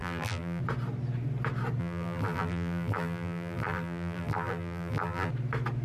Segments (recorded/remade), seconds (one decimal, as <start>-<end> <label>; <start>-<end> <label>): 0.0-0.6 remade; 0.6-1.8 recorded; 1.8-5.3 remade; 5.3-5.8 recorded